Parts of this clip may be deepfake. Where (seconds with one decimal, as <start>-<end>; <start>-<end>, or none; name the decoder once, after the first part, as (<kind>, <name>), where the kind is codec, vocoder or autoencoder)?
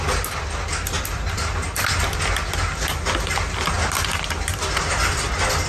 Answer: none